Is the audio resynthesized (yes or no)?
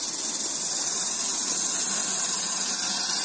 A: no